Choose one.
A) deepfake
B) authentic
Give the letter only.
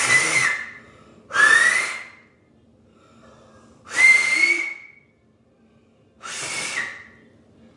B